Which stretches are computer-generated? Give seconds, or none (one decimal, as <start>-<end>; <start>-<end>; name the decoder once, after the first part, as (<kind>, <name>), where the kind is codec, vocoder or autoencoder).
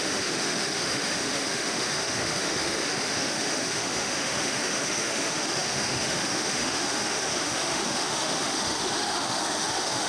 0.0-10.1 (autoencoder, DAC-VAE)